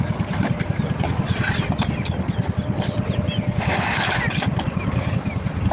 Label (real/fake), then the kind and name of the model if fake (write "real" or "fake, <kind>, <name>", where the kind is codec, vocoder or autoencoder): fake, vocoder, BigVGAN v2